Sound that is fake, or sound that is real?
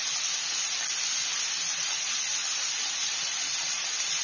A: real